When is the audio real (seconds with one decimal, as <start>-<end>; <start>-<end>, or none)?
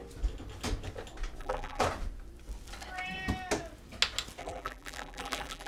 0.0-1.4; 1.8-4.4